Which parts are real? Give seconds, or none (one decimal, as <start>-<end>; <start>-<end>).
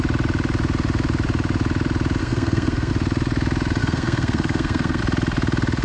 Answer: 0.0-2.2; 2.9-3.8; 5.0-5.8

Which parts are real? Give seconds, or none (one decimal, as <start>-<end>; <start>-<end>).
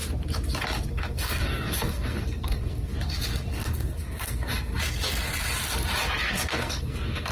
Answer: 0.0-0.9; 2.9-3.5; 4.7-6.2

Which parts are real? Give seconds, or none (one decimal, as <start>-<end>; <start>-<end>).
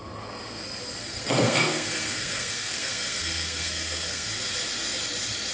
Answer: 0.0-1.0; 4.3-5.5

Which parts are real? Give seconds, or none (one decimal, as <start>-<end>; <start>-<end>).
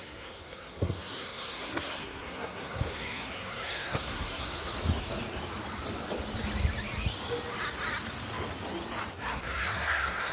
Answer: 4.7-9.1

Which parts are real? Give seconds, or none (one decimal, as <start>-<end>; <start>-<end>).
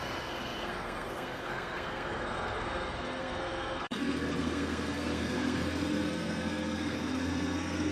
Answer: none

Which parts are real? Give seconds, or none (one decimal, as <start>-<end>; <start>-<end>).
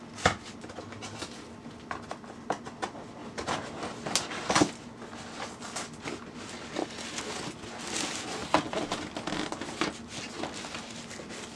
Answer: 0.0-11.6